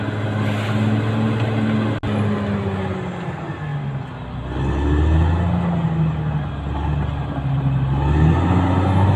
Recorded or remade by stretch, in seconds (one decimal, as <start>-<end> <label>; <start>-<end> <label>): 0.0-9.2 recorded